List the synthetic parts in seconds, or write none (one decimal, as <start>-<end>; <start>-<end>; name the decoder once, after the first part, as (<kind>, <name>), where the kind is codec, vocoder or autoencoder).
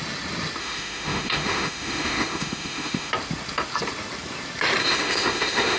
0.6-3.1 (autoencoder, DAC-VAE); 4.8-5.8